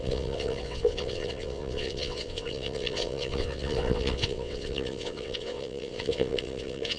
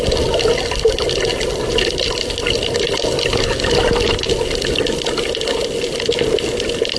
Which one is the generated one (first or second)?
first